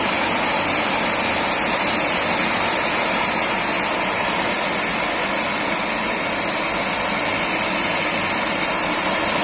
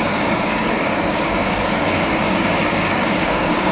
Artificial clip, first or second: second